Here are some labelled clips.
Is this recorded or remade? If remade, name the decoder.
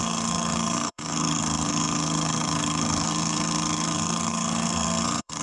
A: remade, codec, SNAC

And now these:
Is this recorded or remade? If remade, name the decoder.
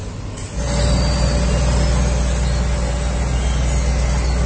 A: recorded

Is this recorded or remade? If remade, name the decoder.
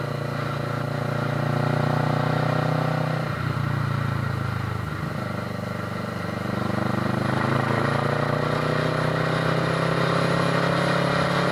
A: recorded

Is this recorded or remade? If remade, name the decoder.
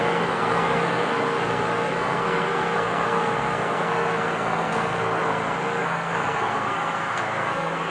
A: remade, codec, SNAC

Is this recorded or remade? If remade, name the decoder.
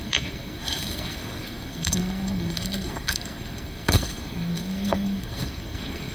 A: remade, codec, SNAC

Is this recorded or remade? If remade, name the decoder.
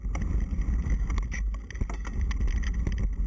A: recorded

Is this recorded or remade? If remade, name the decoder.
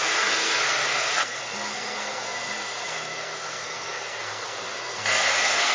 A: remade, codec, SNAC